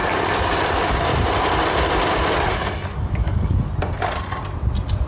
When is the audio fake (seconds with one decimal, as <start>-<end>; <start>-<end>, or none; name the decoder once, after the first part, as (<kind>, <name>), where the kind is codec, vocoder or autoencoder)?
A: 2.9-3.7 (codec, DAC)